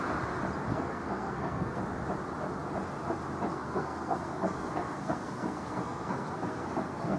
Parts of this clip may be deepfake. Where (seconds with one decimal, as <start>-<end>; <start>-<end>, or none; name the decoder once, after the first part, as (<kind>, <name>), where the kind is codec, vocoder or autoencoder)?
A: 0.7-1.8 (codec, SNAC); 3.5-7.2